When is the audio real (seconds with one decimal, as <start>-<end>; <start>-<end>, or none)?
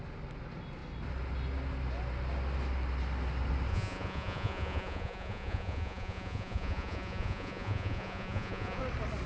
0.0-3.7; 8.8-9.3